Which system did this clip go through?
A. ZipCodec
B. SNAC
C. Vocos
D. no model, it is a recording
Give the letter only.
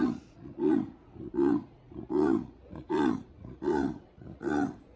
C